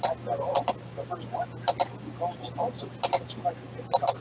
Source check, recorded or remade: recorded